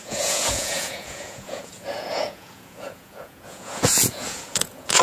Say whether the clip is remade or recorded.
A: remade